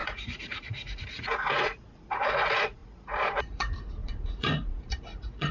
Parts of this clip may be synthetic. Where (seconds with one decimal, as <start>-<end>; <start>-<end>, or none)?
0.0-5.5